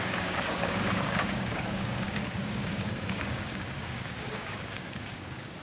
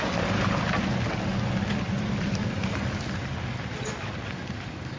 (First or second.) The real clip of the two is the second